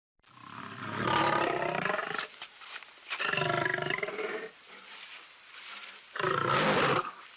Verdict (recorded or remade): remade